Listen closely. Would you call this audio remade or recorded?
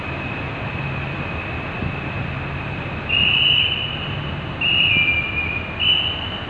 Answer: recorded